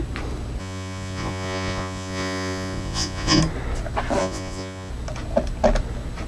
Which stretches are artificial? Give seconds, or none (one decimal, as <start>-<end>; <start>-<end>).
0.6-3.4; 4.2-4.9